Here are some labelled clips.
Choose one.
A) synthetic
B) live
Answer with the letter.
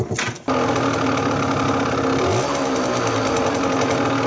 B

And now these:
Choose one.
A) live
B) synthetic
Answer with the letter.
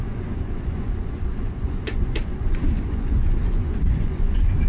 B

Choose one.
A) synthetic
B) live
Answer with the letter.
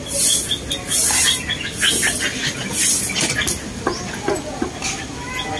B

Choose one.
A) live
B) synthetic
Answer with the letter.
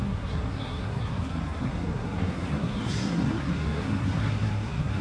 B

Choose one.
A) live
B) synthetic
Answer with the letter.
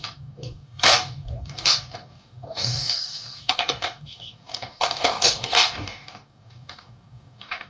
B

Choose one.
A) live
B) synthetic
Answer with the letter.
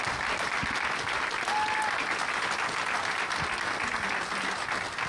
A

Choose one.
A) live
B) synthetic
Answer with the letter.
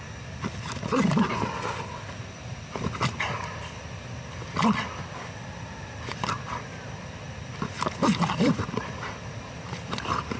A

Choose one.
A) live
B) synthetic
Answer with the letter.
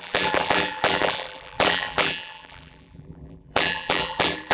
B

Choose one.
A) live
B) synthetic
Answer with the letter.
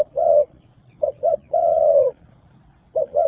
B